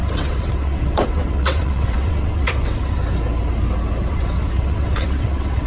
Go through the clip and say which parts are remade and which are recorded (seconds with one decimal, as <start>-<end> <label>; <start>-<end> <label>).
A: 0.0-3.0 remade; 3.0-4.1 recorded; 4.1-5.7 remade